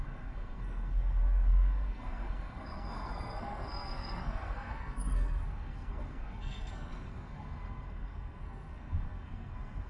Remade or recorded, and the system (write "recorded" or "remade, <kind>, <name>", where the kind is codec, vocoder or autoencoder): remade, codec, SNAC